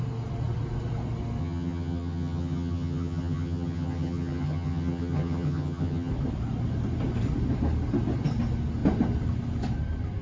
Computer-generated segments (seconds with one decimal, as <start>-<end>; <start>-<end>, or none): 1.4-6.1